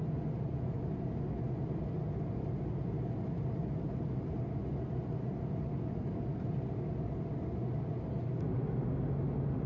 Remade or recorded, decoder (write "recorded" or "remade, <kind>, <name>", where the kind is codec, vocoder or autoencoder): recorded